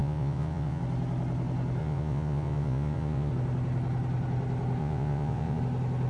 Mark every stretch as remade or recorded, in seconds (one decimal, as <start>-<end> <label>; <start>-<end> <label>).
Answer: 0.0-0.8 remade; 0.8-1.8 recorded; 1.8-3.3 remade; 3.3-4.8 recorded; 4.8-5.6 remade; 5.6-6.1 recorded